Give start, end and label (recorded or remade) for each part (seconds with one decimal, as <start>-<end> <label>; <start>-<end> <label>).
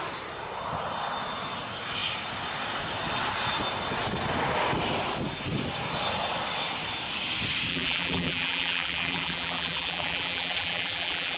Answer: 0.0-7.7 recorded; 7.7-11.4 remade